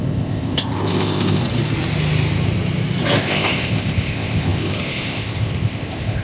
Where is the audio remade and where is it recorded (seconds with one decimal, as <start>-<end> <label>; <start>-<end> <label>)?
0.0-1.4 remade; 1.4-3.2 recorded; 3.2-6.2 remade